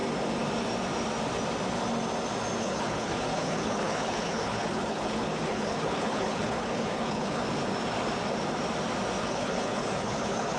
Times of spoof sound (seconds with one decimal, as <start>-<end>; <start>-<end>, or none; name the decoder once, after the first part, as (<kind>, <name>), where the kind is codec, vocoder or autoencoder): 2.6-7.4 (codec, HILCodec); 9.2-10.6